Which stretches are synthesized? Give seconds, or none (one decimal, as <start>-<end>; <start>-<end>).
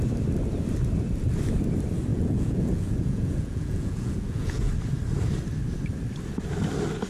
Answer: 2.1-4.7